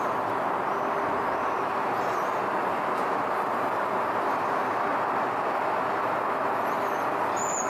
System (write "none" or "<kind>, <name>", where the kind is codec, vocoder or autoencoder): none